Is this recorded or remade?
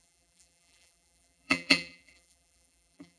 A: remade